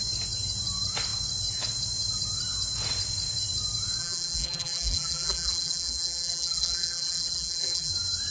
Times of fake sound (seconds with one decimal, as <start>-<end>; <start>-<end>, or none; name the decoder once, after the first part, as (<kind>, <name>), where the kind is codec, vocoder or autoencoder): 4.0-7.9 (vocoder, BigVGAN v2)